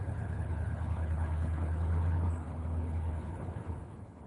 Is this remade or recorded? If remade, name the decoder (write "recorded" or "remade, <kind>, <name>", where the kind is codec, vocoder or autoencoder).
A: remade, codec, HILCodec